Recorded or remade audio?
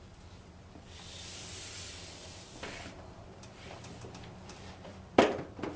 remade